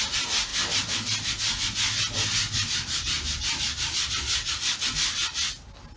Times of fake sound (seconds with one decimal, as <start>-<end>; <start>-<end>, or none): none